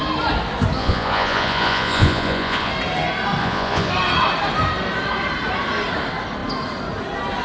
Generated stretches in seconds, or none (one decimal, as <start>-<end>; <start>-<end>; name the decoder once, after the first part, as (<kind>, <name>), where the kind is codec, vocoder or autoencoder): 0.8-2.7 (vocoder, Vocos); 3.4-3.9